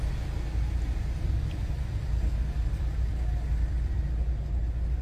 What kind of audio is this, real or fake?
real